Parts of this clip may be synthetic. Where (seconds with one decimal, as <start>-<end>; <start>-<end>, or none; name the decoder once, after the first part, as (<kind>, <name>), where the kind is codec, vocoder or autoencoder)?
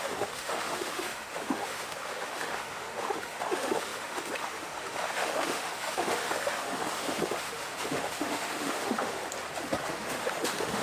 0.0-9.2 (autoencoder, DAC-VAE); 9.9-10.8